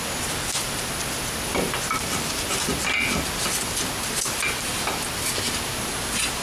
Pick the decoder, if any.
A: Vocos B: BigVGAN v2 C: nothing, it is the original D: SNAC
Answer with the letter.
C